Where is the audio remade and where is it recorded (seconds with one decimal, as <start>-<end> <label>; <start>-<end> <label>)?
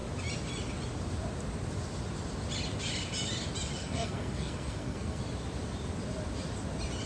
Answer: 0.0-3.8 recorded; 3.8-5.2 remade; 5.2-7.1 recorded